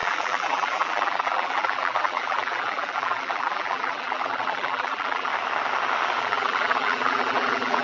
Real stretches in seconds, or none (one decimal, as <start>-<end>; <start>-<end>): 5.3-6.2